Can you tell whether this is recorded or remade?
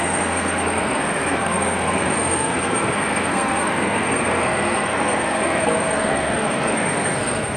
remade